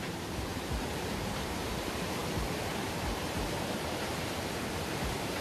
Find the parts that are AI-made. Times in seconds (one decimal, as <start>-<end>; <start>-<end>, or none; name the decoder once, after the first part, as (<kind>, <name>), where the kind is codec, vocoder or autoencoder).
0.0-5.4 (vocoder, BigVGAN v2)

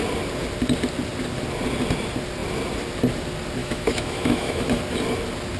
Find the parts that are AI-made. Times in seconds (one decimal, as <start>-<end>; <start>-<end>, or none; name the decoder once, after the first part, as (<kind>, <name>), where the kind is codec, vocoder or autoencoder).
3.6-4.8 (autoencoder, DAC-VAE)

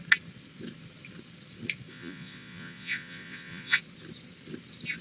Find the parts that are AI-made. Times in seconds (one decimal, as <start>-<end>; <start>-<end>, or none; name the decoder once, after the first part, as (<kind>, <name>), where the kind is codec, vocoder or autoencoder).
1.9-3.8 (vocoder, Vocos)

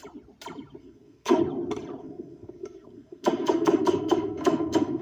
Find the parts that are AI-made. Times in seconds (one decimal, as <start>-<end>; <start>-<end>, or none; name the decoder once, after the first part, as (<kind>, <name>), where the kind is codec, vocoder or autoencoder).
0.8-1.4 (codec, SNAC); 2.0-5.0